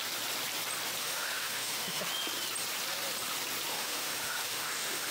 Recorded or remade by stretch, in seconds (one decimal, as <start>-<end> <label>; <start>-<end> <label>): 0.0-1.0 recorded; 1.0-2.0 remade; 2.0-3.7 recorded; 3.7-5.1 remade